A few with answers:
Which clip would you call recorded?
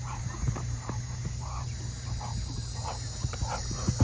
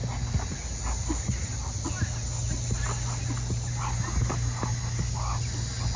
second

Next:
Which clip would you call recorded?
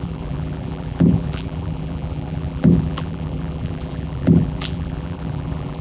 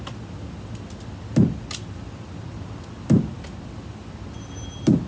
second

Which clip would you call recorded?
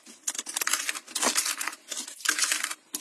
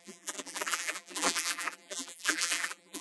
first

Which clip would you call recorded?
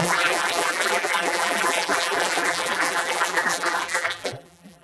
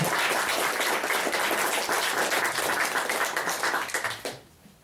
second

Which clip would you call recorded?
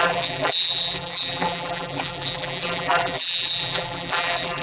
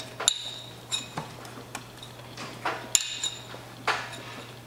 second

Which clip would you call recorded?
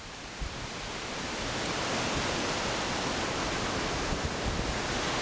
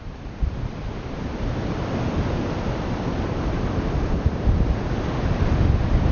first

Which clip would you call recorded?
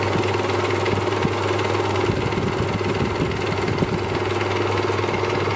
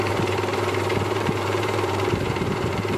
first